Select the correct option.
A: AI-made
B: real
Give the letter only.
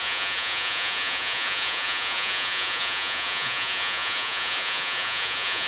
A